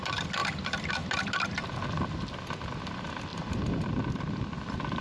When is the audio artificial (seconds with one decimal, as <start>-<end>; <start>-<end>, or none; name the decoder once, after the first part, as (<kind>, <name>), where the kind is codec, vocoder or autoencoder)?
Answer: 3.3-3.9 (vocoder, BigVGAN v2)